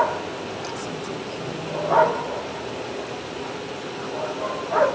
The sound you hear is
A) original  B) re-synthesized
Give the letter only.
A